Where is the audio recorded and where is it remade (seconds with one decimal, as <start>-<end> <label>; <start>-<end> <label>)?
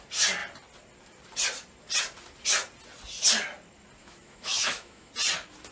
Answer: 0.0-4.0 recorded; 4.0-5.1 remade; 5.1-5.7 recorded